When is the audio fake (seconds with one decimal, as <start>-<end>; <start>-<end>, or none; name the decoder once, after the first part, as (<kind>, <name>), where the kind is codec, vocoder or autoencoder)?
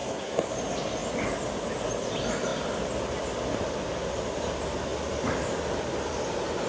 0.0-0.5 (codec, SNAC)